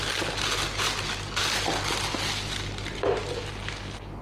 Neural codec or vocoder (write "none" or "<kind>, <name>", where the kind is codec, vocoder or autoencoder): none